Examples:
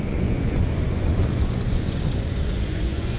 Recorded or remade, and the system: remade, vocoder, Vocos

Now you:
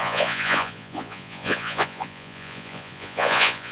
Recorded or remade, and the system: remade, vocoder, Vocos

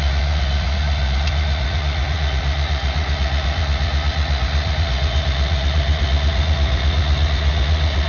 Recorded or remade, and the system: remade, vocoder, Vocos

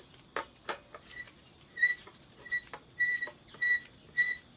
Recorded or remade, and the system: recorded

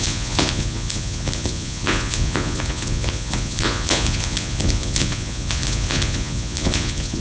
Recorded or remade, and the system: remade, vocoder, Vocos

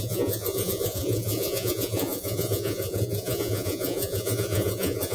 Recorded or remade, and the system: remade, vocoder, Vocos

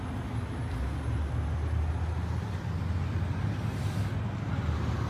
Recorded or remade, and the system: recorded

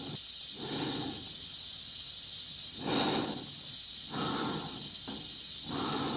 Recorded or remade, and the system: recorded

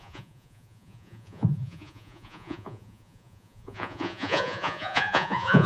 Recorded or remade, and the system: remade, vocoder, Vocos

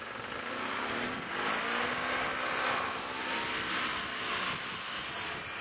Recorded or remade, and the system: recorded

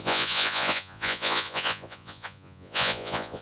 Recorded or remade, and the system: remade, vocoder, Vocos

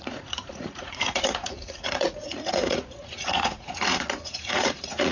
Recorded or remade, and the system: remade, vocoder, Vocos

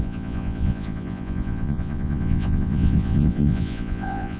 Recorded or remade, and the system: remade, vocoder, Vocos